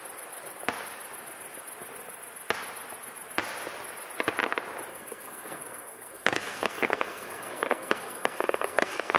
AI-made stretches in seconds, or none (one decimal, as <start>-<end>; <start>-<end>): 4.9-9.2